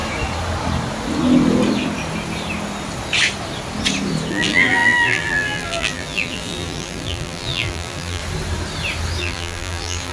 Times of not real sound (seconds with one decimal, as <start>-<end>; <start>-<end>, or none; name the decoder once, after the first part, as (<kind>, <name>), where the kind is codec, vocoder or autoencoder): 4.3-8.2 (vocoder, BigVGAN v2); 9.2-10.1